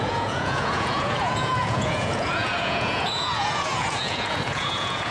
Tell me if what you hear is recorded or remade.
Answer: remade